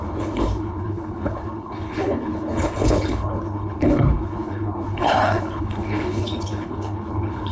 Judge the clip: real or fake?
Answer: fake